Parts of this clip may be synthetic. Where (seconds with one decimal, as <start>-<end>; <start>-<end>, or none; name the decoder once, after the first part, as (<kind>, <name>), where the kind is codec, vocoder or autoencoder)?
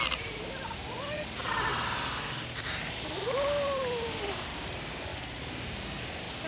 none